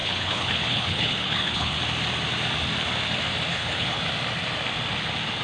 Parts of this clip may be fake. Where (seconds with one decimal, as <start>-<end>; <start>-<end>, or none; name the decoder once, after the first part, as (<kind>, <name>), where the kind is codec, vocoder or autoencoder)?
0.0-1.8 (codec, HILCodec); 3.5-4.0